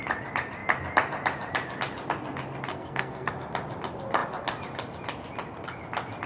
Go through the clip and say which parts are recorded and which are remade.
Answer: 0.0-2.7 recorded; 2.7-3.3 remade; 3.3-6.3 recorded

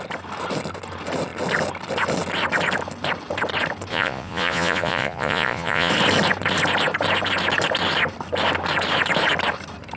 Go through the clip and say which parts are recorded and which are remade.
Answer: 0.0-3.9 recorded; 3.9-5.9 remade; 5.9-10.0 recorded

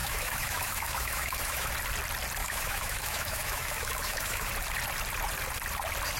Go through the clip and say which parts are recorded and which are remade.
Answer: 0.0-1.7 remade; 1.7-2.4 recorded; 2.4-4.5 remade; 4.5-6.2 recorded

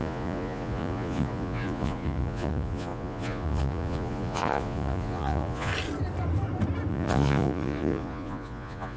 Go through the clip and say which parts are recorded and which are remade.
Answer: 0.0-5.7 remade; 5.7-6.9 recorded; 6.9-9.0 remade

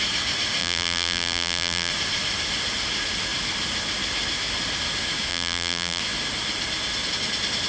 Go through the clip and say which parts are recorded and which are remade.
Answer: 0.0-0.6 recorded; 0.6-1.9 remade; 1.9-5.3 recorded; 5.3-6.0 remade; 6.0-7.7 recorded

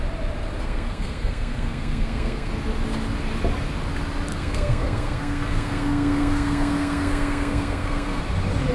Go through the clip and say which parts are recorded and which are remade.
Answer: 0.0-0.6 recorded; 0.6-2.5 remade; 2.5-4.3 recorded; 4.3-8.2 remade; 8.2-8.7 recorded

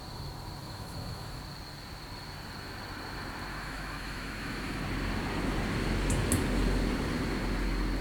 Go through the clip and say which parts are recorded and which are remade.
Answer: 0.0-0.6 recorded; 0.6-1.4 remade; 1.4-3.5 recorded; 3.5-4.8 remade; 4.8-8.0 recorded